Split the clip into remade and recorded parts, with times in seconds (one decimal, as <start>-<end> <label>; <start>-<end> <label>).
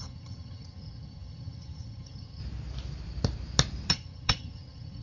0.0-2.4 remade; 2.4-3.9 recorded; 3.9-5.0 remade